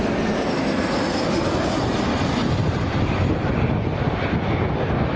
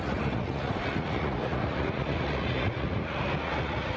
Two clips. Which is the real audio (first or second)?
first